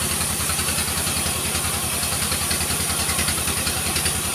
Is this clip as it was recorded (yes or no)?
no